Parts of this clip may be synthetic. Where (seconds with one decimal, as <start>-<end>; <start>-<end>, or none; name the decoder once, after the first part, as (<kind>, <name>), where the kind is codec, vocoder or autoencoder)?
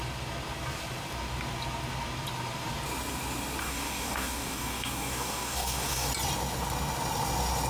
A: 3.6-6.1 (codec, DAC)